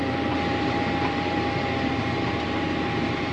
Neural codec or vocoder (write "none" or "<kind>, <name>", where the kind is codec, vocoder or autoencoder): vocoder, BigVGAN v2